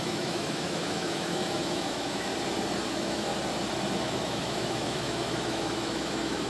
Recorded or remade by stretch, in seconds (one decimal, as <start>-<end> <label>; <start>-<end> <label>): 0.0-2.3 remade; 2.3-2.9 recorded; 2.9-3.3 remade; 3.3-4.0 recorded; 4.0-6.5 remade